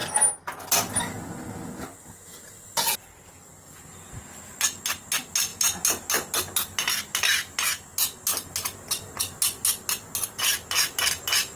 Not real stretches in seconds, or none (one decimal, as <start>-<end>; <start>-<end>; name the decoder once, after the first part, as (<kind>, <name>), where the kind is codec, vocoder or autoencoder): none